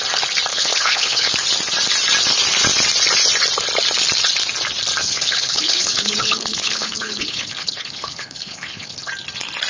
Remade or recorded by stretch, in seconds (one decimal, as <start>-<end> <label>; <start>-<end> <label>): 0.0-0.5 recorded; 0.5-1.3 remade; 1.3-5.0 recorded; 5.0-9.1 remade; 9.1-9.7 recorded